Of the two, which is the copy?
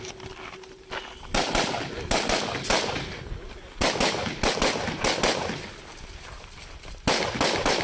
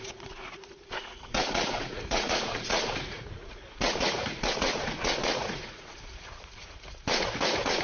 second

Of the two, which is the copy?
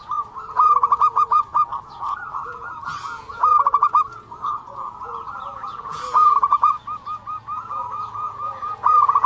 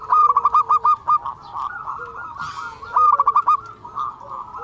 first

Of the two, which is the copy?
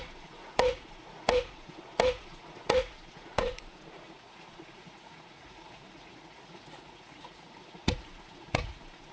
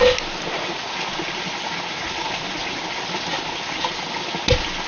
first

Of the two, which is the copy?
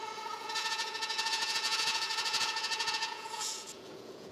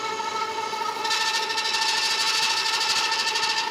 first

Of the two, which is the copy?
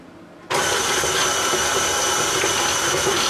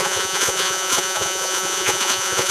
second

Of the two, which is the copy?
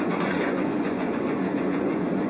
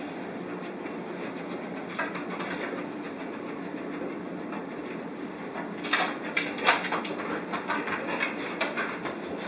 first